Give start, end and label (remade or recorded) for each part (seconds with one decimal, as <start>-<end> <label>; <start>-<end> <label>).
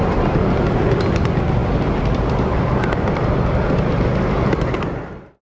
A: 0.0-5.5 recorded